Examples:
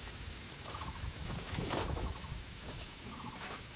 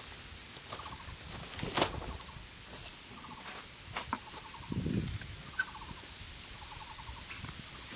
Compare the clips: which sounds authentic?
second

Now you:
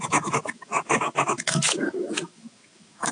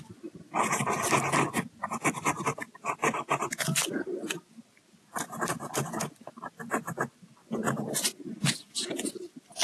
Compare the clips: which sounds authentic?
second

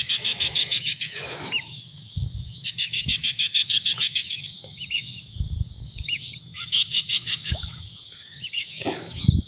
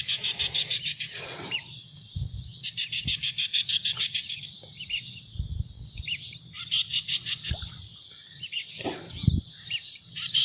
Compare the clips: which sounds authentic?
second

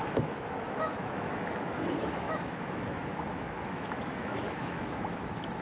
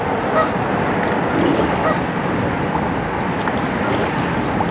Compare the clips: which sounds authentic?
second